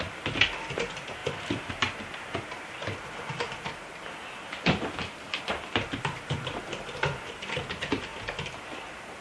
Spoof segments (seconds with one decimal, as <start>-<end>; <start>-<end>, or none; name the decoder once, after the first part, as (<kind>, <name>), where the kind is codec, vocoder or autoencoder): none